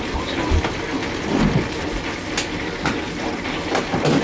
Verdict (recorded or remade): recorded